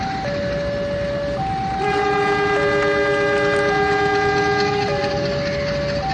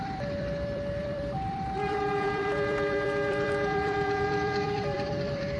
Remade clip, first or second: second